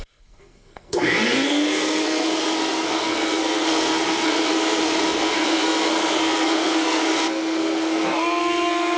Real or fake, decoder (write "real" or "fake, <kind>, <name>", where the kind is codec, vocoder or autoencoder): fake, codec, SNAC